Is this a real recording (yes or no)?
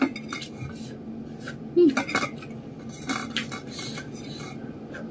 yes